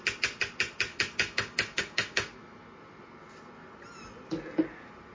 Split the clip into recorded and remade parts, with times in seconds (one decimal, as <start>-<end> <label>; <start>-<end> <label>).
0.0-0.9 recorded; 0.9-2.3 remade; 2.3-5.1 recorded